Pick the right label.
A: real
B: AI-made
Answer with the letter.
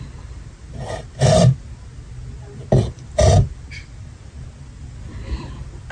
A